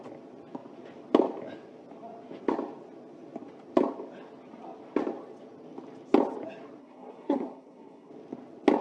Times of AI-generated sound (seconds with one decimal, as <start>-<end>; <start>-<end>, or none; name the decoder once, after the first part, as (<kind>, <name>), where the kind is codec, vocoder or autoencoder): 6.8-8.1 (codec, SNAC)